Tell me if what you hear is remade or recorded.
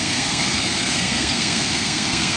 remade